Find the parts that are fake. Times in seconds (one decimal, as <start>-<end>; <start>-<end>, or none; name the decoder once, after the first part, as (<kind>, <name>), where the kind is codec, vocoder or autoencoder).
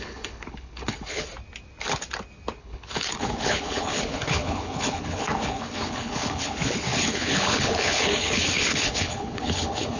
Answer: 0.0-1.3 (codec, HILCodec); 2.6-10.0